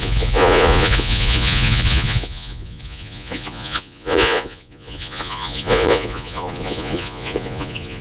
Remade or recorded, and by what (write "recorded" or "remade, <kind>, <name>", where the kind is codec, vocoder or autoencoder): remade, vocoder, Vocos